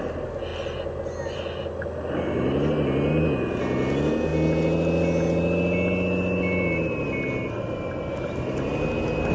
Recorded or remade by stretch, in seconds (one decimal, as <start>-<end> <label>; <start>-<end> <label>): 0.0-9.3 recorded